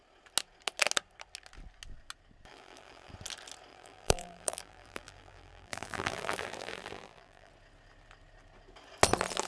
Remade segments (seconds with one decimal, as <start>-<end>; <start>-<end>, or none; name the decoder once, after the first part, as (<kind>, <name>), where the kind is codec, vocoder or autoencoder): 2.5-3.1 (vocoder, BigVGAN v2); 3.7-7.5